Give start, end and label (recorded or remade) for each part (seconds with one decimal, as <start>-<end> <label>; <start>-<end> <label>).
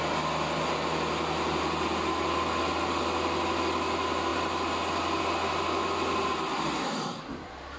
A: 0.0-7.8 recorded